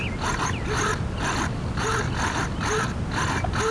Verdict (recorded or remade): recorded